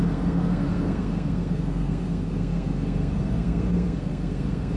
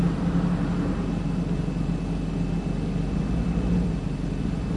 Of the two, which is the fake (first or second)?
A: first